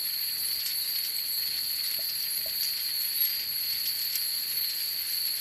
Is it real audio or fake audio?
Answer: real